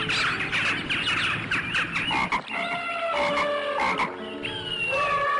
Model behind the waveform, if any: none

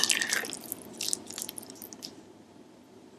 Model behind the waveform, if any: none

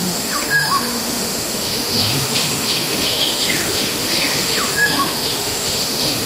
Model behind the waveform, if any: autoencoder, DAC-VAE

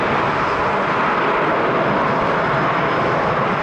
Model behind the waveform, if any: none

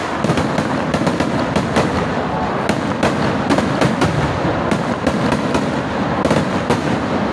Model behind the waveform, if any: none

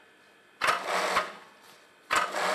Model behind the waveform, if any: none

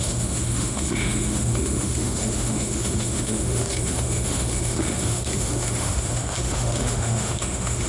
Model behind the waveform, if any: autoencoder, DAC-VAE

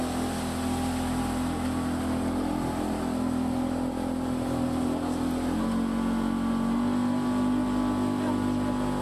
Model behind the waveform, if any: none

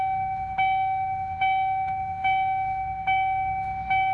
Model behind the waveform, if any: autoencoder, DAC-VAE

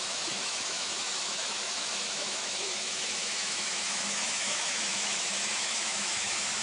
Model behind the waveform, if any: autoencoder, DAC-VAE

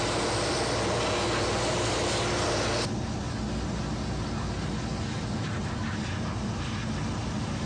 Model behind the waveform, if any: none